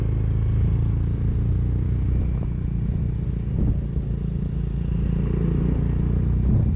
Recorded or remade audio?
recorded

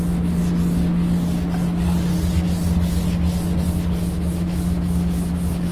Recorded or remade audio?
recorded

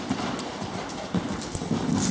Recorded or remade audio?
recorded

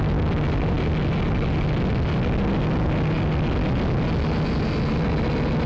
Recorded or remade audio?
recorded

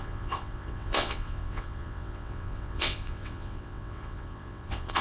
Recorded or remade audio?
remade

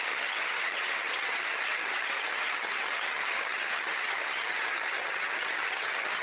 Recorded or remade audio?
remade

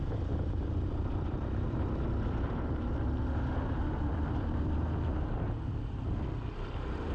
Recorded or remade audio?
remade